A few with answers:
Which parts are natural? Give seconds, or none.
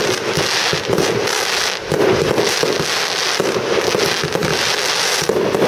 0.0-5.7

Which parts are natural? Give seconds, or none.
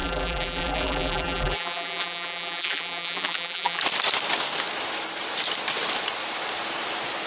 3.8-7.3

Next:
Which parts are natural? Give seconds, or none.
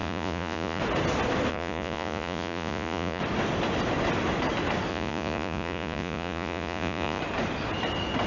0.8-1.5; 3.2-4.9; 7.2-8.3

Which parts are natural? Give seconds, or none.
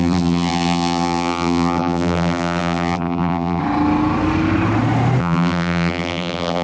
3.6-5.2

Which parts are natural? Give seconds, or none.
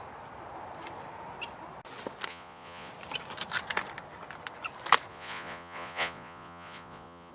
0.0-2.3; 2.9-5.1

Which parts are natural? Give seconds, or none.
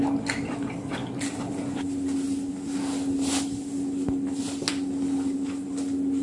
0.0-6.2